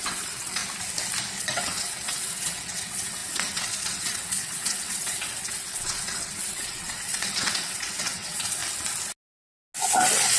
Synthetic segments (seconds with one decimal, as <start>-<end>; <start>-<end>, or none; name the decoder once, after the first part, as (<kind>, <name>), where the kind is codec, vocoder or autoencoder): 0.0-0.6 (vocoder, WaveNeXt); 1.4-8.6